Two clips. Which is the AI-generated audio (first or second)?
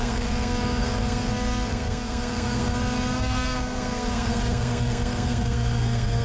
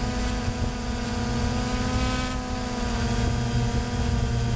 first